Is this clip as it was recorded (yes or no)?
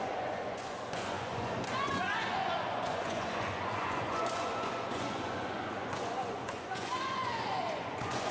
no